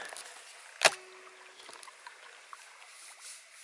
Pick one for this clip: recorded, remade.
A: recorded